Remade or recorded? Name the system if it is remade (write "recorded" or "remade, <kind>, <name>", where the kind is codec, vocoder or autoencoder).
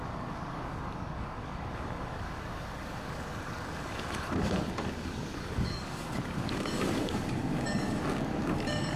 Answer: remade, codec, DAC